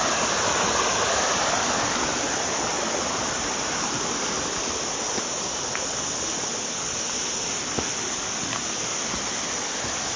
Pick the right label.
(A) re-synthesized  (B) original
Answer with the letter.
B